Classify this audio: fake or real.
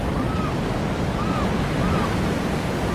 real